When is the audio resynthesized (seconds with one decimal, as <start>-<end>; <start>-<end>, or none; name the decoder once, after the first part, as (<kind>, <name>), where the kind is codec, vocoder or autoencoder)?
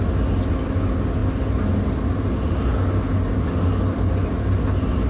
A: none